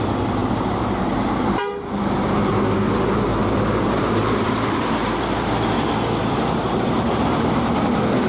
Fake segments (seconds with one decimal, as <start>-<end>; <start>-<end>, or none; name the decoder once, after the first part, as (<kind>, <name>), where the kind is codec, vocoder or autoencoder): 0.4-2.0 (vocoder, BigVGAN v2); 3.4-5.5; 6.2-7.8